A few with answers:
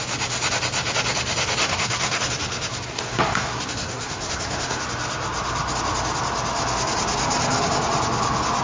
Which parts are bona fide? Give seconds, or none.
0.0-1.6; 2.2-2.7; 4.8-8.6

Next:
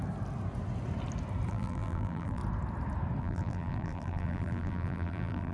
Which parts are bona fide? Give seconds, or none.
0.0-1.5; 2.4-3.2

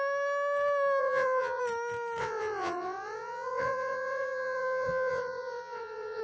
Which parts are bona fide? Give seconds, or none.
0.0-1.0; 1.6-2.2

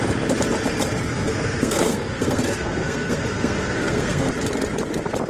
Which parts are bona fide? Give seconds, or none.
0.0-1.1; 4.3-5.3

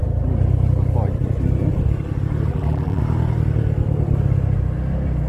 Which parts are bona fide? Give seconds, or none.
0.0-2.5; 3.0-5.3